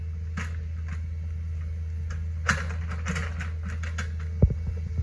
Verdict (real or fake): real